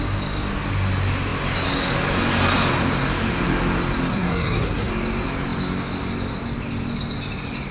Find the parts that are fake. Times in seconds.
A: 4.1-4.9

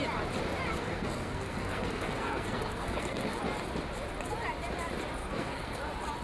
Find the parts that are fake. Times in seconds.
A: 0.7-3.4; 5.2-5.8